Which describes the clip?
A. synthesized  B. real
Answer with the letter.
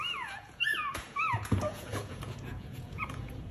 A